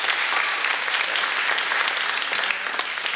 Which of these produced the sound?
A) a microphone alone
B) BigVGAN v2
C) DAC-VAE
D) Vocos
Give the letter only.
A